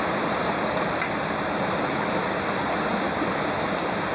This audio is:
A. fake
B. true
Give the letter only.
B